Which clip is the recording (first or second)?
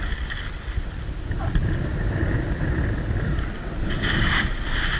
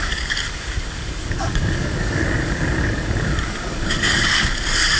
first